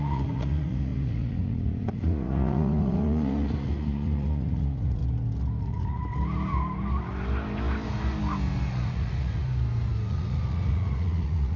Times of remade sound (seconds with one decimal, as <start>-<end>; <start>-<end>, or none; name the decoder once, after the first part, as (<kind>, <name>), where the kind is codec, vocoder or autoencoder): 0.0-5.0 (vocoder, Vocos); 5.6-6.0; 8.7-9.4; 10.1-11.6